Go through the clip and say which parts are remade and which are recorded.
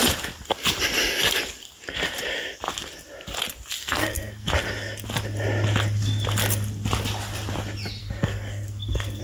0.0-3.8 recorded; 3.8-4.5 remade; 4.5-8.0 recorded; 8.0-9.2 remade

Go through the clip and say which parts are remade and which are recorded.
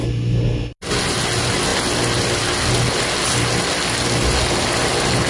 0.0-1.0 recorded; 1.0-1.7 remade; 1.7-5.3 recorded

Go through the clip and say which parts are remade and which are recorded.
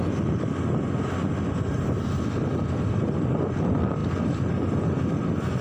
0.0-5.6 recorded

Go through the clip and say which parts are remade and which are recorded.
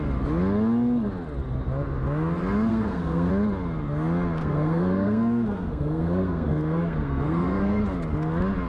0.0-2.7 recorded; 2.7-3.3 remade; 3.3-4.4 recorded; 4.4-7.8 remade; 7.8-8.7 recorded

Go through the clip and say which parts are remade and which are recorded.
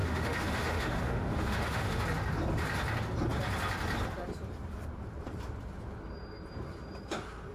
0.0-2.0 remade; 2.0-7.5 recorded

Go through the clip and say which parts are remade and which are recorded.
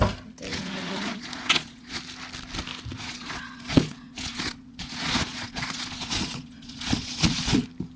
0.0-0.5 recorded; 0.5-2.0 remade; 2.0-2.9 recorded; 2.9-7.6 remade; 7.6-8.0 recorded